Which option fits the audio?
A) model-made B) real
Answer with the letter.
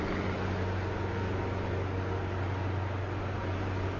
B